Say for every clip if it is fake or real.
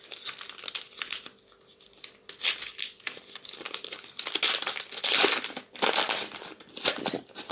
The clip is real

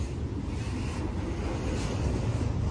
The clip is real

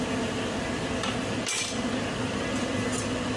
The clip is real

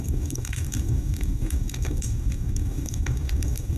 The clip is fake